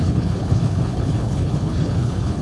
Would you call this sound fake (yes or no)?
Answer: yes